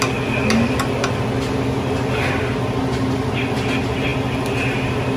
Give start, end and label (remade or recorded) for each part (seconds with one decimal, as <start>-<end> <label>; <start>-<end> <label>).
0.0-5.2 recorded